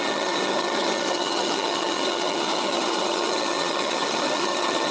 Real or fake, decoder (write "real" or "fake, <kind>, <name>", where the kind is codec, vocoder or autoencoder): fake, vocoder, HiFi-GAN